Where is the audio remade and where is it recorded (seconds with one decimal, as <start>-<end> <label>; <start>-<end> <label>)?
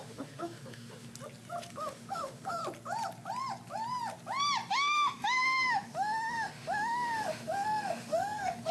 0.0-1.1 remade; 1.1-1.7 recorded; 1.7-2.6 remade; 2.6-4.7 recorded; 4.7-8.7 remade